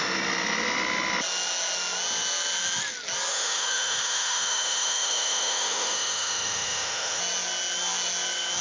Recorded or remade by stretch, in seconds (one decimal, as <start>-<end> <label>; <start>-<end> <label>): 0.0-3.3 recorded; 3.3-7.2 remade; 7.2-8.6 recorded